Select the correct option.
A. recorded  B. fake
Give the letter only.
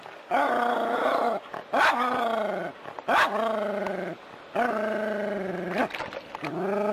A